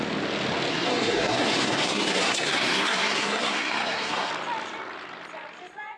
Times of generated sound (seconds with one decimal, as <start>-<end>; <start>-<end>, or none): 0.7-4.3